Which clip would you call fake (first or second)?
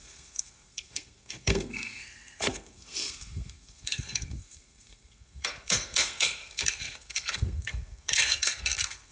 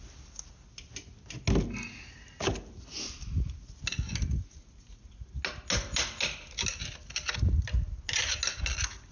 first